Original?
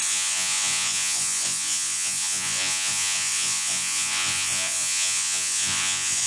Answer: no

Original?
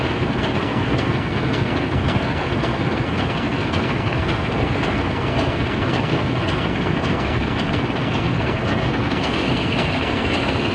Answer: no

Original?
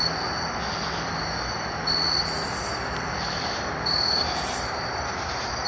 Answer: yes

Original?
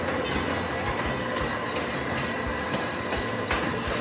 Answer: yes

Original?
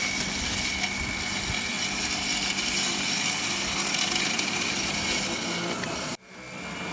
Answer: yes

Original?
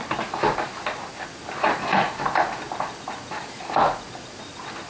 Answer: yes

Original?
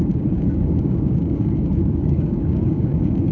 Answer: no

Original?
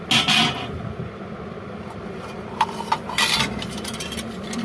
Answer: yes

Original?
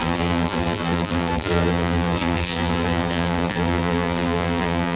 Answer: no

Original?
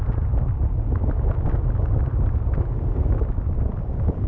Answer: yes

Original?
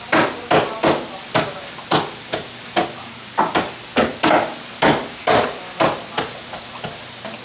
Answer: yes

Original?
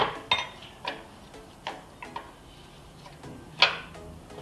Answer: yes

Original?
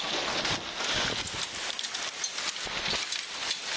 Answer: yes